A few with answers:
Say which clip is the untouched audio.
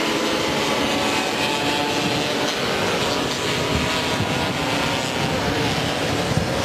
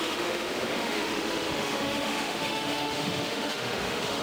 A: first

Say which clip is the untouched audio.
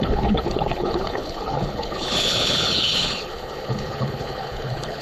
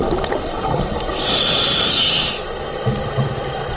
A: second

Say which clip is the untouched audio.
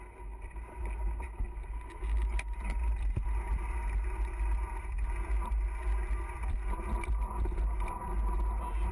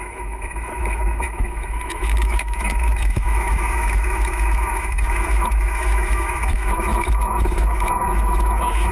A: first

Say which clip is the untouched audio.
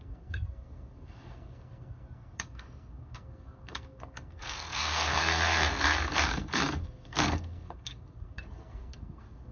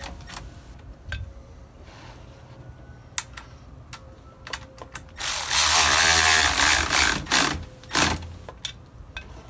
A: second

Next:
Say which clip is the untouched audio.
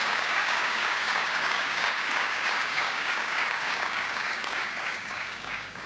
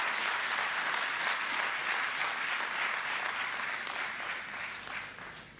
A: second